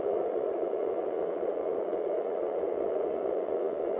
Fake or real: fake